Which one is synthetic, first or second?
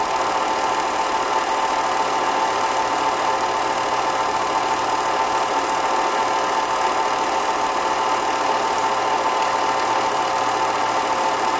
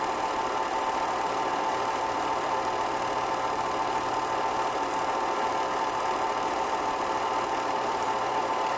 second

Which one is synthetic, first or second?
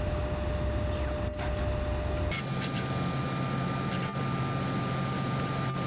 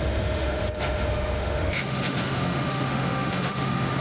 second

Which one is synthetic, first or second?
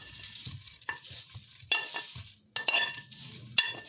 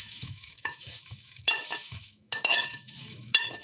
second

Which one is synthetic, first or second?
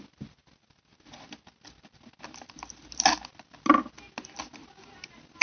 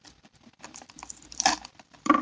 second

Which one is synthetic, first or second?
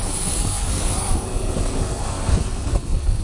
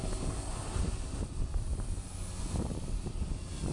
first